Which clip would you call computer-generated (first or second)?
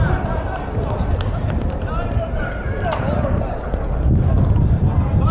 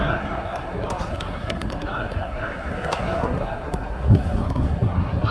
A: second